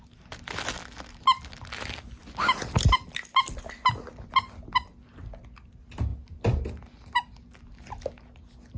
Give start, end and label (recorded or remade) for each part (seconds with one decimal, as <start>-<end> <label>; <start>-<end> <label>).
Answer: 0.0-8.8 recorded